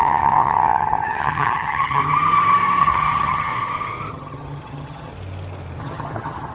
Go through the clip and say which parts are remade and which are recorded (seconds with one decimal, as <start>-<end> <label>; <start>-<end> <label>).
0.0-2.0 remade; 2.0-2.8 recorded; 2.8-3.5 remade; 3.5-4.1 recorded; 4.1-5.1 remade; 5.1-5.8 recorded; 5.8-6.5 remade